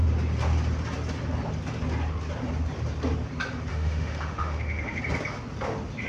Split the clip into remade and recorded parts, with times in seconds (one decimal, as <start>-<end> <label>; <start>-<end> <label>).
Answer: 0.0-3.7 recorded; 3.7-5.0 remade; 5.0-6.1 recorded